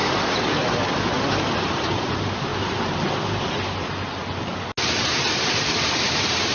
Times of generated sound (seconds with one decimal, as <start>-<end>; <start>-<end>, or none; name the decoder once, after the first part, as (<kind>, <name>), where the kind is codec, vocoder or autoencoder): 0.0-2.5 (vocoder, BigVGAN v2); 5.0-6.5